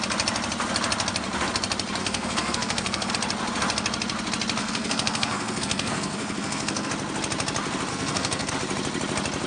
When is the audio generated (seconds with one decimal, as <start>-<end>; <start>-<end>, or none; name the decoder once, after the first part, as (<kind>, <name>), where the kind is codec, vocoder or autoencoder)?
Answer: 2.0-3.1 (codec, SNAC); 4.6-6.9; 7.9-8.5